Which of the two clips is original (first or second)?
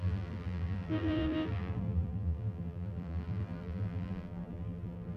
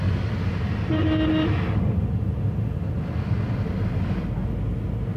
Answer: second